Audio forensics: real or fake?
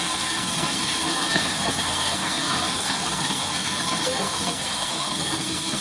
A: fake